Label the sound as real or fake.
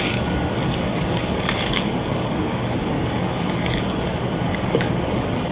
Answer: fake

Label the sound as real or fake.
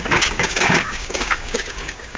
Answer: fake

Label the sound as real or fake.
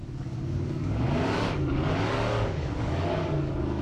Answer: fake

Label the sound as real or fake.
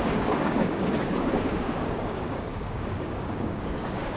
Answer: fake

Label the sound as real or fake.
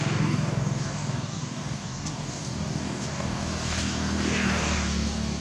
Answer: fake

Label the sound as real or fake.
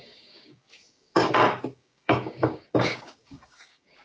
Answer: fake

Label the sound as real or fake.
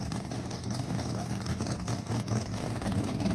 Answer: fake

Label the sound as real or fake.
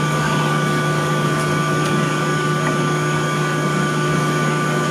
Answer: fake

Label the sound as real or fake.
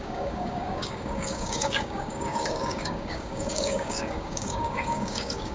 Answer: fake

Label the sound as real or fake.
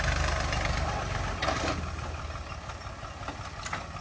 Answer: real